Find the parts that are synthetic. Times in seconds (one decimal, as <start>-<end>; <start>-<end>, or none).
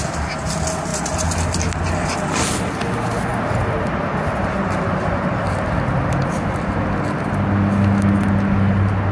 none